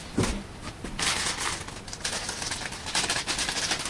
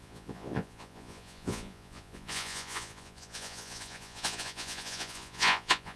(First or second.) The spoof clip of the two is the second